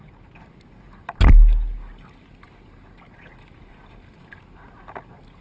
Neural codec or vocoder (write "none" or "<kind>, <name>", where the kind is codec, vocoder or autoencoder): none